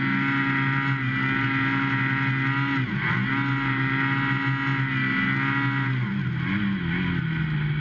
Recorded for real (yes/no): yes